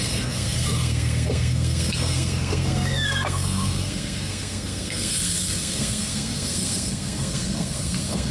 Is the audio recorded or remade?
remade